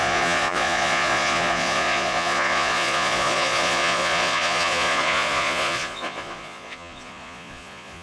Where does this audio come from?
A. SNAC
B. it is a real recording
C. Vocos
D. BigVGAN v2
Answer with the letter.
C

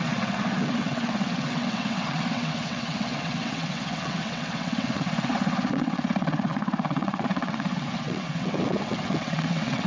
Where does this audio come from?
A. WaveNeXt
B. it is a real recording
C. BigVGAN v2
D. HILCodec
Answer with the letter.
A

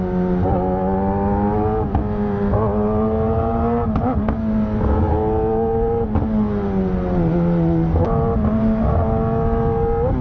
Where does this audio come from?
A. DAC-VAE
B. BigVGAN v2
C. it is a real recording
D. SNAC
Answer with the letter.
C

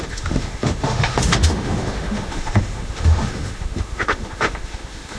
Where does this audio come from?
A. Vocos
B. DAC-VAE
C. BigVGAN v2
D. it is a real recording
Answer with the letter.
B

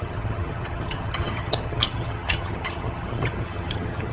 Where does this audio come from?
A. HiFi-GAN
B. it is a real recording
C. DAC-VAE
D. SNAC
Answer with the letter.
A